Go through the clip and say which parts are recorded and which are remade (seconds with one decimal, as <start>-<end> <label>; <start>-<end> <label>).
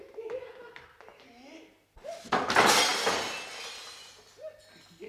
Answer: 0.0-5.1 recorded